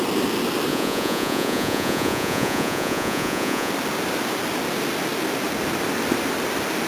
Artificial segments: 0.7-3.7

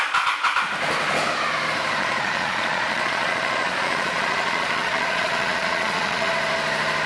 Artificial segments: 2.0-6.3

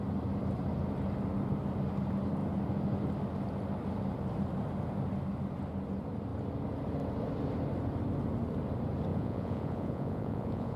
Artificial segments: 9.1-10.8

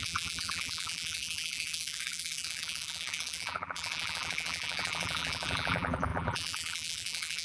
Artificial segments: 0.0-7.4

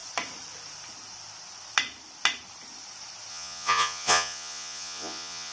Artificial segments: 3.3-5.5

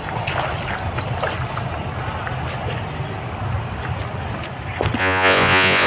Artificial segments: 5.0-5.9

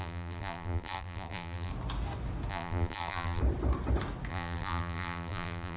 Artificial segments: 0.0-1.7; 2.5-3.4; 4.3-5.8

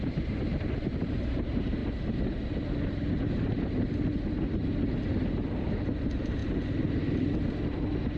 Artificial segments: 0.0-1.8; 5.7-6.4